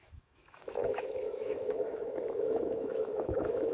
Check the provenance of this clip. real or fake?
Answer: fake